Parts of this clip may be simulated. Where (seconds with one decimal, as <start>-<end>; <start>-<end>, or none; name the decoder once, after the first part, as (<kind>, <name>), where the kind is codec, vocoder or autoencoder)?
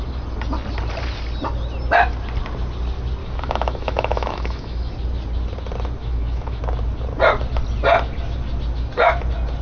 3.2-4.9 (autoencoder, DAC-VAE); 6.0-6.6